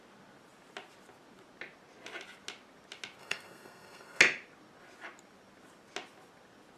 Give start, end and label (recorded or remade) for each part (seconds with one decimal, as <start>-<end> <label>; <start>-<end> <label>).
0.0-3.2 recorded; 3.2-4.2 remade; 4.2-6.8 recorded